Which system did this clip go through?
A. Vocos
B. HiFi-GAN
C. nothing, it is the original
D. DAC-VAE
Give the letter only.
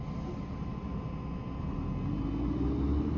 C